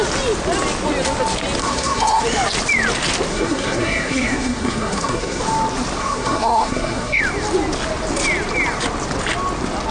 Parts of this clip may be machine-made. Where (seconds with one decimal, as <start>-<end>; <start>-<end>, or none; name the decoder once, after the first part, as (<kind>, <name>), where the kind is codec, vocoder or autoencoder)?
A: 1.6-2.2 (codec, SNAC); 3.3-5.4; 6.0-7.2